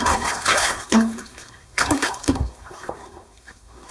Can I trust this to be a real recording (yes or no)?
no